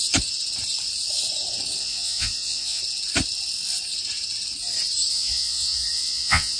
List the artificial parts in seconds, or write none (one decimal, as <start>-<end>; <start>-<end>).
1.8-2.8; 5.1-6.6